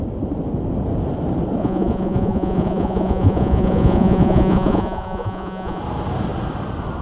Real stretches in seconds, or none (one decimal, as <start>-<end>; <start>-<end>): 0.0-1.6; 5.8-7.0